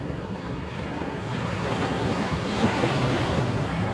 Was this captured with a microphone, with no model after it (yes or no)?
no